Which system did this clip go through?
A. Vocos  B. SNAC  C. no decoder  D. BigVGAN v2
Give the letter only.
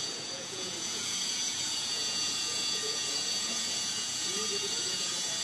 A